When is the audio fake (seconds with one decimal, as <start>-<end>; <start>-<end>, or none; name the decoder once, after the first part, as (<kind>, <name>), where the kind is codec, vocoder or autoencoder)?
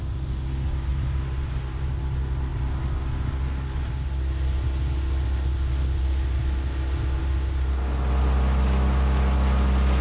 0.9-2.0 (vocoder, BigVGAN v2)